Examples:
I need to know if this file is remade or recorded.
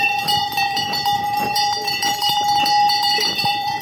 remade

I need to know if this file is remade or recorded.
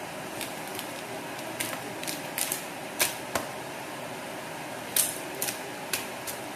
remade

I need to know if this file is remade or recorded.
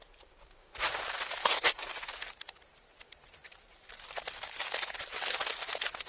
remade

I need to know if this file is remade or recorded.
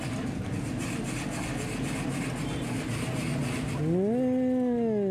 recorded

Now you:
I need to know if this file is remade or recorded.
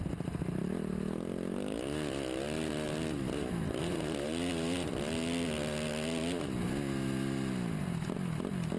recorded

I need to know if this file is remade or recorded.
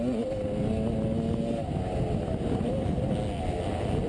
recorded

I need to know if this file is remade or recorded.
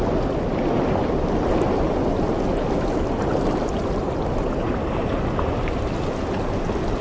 recorded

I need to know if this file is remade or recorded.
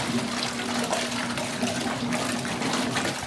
recorded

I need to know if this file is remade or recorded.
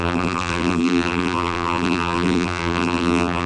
remade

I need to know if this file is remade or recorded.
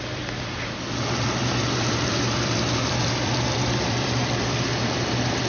remade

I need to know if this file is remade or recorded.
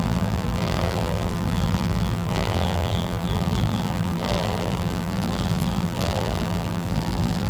remade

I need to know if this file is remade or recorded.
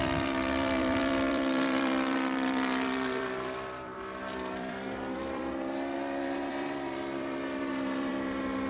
remade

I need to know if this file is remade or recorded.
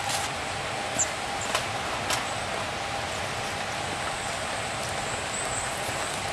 recorded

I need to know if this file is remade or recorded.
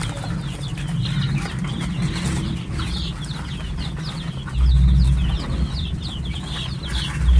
recorded